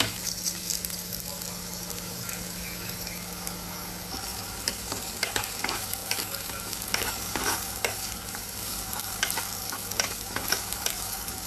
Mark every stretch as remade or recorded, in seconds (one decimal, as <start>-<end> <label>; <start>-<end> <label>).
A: 0.0-11.5 remade